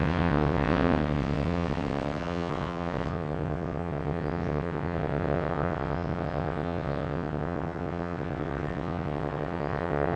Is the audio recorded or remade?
remade